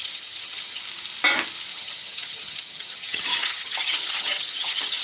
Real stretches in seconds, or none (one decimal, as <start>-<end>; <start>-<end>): 0.8-1.7